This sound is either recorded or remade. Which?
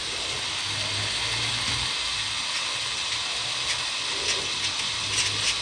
recorded